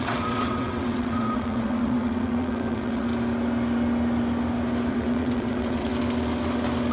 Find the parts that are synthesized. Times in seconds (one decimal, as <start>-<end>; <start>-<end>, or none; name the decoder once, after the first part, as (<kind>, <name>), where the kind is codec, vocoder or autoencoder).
0.0-3.1 (vocoder, WaveNeXt); 4.9-5.9